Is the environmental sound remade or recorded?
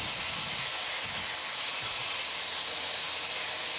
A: recorded